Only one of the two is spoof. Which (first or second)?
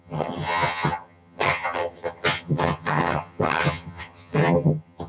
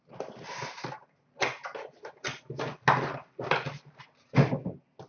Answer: first